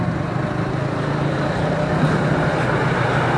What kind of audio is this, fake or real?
fake